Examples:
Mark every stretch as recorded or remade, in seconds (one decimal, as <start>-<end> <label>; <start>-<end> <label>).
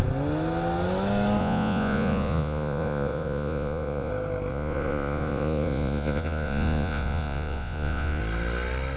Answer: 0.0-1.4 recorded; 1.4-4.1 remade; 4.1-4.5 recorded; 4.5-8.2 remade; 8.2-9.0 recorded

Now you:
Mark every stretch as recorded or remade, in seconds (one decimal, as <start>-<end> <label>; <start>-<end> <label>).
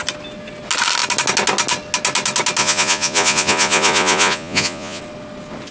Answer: 0.0-2.6 recorded; 2.6-5.0 remade; 5.0-5.7 recorded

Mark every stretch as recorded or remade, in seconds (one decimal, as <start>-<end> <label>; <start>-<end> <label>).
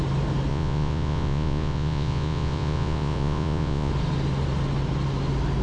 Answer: 0.0-0.5 recorded; 0.5-3.9 remade; 3.9-5.6 recorded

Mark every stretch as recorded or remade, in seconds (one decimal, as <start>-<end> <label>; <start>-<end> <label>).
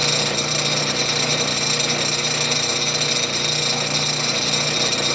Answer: 0.0-5.1 recorded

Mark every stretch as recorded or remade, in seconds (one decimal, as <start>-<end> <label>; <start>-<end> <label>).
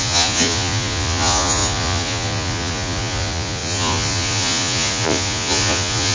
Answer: 0.0-6.1 remade